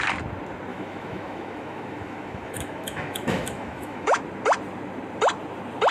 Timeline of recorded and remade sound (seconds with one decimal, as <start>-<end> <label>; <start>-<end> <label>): 0.0-0.7 recorded; 0.7-4.2 remade; 4.2-5.9 recorded